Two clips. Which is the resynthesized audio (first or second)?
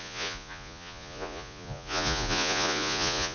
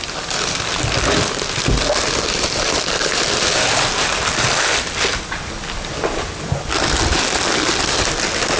first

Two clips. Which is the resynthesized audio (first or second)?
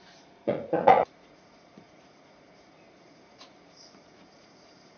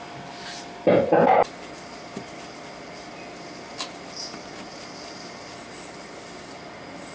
first